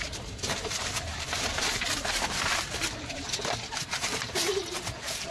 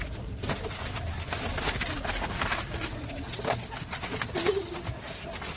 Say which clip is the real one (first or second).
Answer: second